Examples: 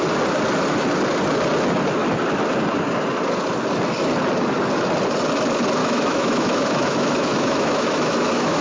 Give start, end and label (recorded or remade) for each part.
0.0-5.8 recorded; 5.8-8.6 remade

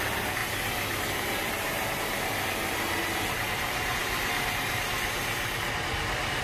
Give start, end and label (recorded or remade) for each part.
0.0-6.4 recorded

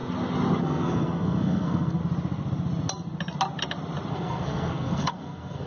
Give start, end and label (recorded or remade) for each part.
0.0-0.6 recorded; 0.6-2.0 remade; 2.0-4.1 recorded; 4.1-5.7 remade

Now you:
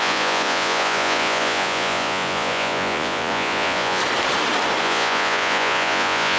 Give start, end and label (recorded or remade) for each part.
0.0-4.0 remade; 4.0-4.8 recorded; 4.8-6.4 remade

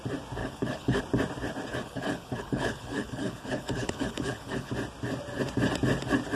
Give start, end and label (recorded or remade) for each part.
0.0-0.4 recorded; 0.4-1.0 remade; 1.0-1.7 recorded; 1.7-4.7 remade; 4.7-6.4 recorded

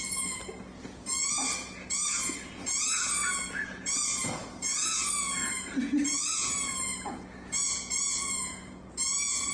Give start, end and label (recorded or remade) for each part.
0.0-9.5 remade

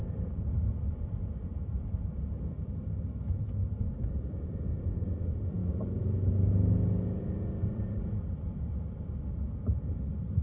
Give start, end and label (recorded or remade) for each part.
0.0-5.6 remade; 5.6-7.6 recorded; 7.6-10.4 remade

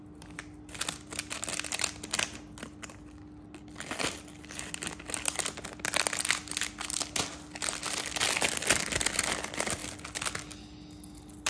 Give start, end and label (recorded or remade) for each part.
0.0-11.5 recorded